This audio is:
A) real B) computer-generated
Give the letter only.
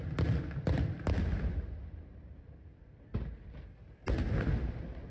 A